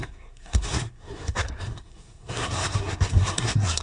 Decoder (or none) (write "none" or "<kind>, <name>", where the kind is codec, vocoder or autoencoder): codec, SNAC